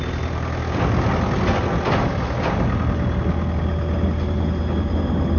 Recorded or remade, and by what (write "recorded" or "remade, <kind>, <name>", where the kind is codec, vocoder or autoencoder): recorded